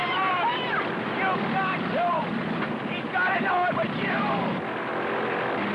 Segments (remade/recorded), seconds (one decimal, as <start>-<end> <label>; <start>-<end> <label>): 0.0-5.7 recorded